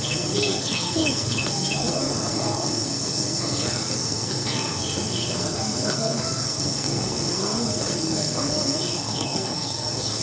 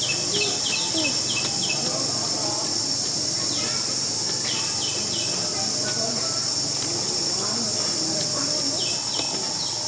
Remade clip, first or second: first